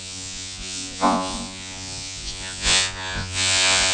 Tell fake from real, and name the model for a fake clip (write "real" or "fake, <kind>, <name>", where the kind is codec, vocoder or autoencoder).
fake, vocoder, Vocos